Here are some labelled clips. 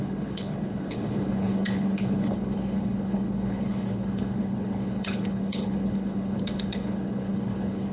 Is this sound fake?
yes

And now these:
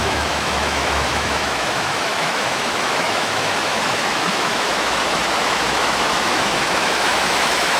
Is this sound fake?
yes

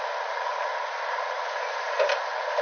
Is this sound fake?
no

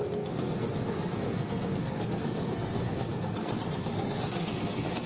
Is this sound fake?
yes